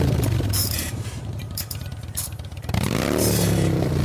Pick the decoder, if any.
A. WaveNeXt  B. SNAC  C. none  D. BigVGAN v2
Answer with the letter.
D